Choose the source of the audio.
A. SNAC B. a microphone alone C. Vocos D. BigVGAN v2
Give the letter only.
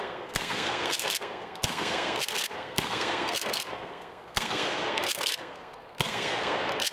A